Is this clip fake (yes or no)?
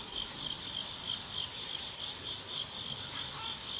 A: no